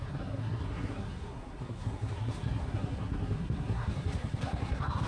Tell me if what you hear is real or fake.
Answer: fake